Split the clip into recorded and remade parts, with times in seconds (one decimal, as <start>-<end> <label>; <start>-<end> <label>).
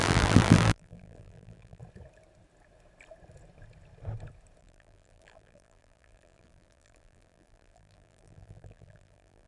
0.0-1.8 remade; 1.8-4.6 recorded; 4.6-9.5 remade